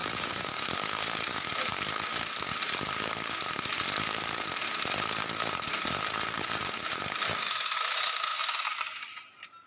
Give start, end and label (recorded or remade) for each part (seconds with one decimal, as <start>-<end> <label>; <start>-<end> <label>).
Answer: 0.0-0.5 remade; 0.5-9.7 recorded